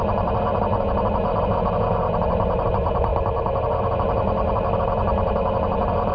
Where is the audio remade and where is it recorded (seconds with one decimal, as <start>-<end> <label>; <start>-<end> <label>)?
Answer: 0.0-6.1 recorded